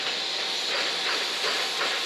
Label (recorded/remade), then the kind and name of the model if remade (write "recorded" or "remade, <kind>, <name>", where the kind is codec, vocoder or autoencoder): recorded